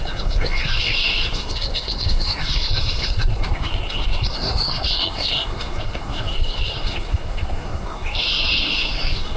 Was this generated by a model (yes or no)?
yes